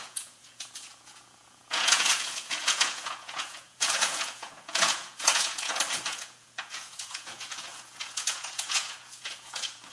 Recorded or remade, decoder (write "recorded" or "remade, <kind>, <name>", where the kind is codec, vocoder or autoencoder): remade, vocoder, Vocos